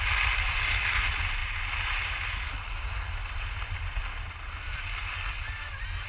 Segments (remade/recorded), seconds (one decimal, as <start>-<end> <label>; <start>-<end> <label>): 0.0-6.1 recorded

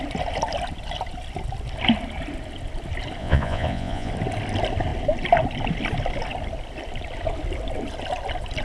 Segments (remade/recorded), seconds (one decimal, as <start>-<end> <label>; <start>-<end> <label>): 0.0-3.2 recorded; 3.2-4.1 remade; 4.1-8.6 recorded

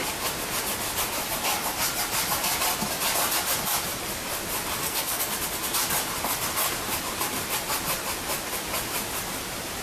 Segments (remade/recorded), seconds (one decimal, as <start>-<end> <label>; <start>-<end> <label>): 0.0-4.8 recorded; 4.8-5.3 remade; 5.3-9.8 recorded

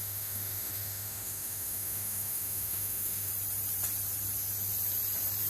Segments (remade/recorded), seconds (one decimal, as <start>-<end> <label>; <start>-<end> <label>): 0.0-3.3 remade; 3.3-5.5 recorded